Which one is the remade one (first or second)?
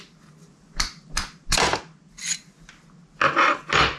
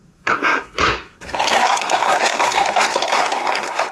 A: second